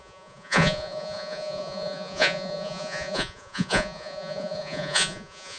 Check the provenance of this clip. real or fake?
fake